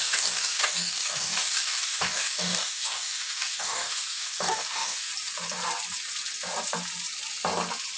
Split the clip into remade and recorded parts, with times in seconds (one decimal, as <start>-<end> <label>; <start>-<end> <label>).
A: 0.0-5.1 remade; 5.1-8.0 recorded